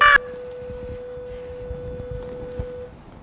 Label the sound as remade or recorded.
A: recorded